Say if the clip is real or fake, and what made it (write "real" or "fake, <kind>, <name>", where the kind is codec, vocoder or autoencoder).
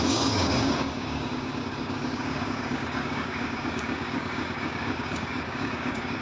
fake, codec, DAC